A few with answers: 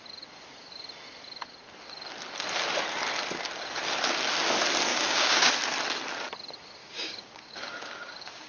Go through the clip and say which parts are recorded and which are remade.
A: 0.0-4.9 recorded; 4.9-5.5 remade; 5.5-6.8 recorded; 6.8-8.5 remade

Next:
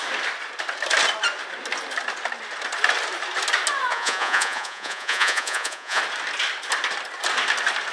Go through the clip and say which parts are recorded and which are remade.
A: 0.0-3.9 recorded; 3.9-6.0 remade; 6.0-7.9 recorded

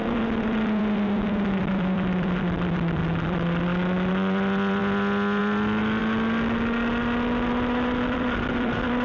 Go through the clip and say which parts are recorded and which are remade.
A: 0.0-3.0 remade; 3.0-4.1 recorded; 4.1-4.8 remade; 4.8-5.4 recorded; 5.4-6.0 remade; 6.0-7.5 recorded; 7.5-9.0 remade